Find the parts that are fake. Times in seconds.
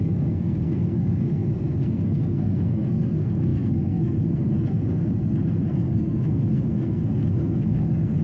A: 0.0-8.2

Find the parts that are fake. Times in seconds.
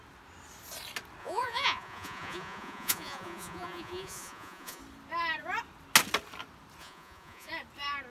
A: 1.2-4.8; 6.8-7.5